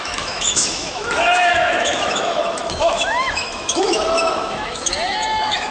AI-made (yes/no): yes